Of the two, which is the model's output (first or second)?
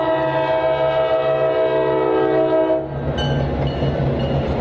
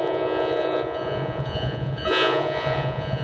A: second